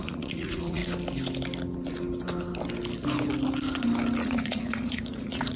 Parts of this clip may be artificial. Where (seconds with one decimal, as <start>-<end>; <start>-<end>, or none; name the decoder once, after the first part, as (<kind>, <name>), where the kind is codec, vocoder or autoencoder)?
0.0-0.8 (vocoder, Vocos); 4.2-5.6